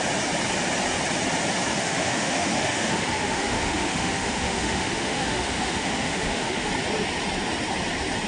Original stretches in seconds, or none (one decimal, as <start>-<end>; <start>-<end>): 0.0-1.7; 6.7-8.3